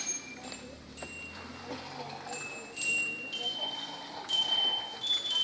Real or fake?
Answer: fake